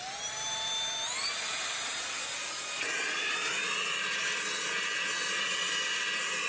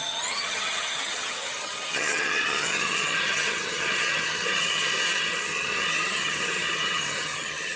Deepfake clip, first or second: second